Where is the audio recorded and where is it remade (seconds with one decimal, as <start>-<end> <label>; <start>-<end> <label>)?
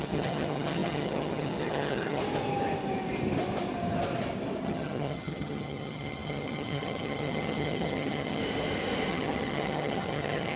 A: 0.0-2.2 remade; 2.2-4.6 recorded; 4.6-8.4 remade; 8.4-9.1 recorded; 9.1-10.6 remade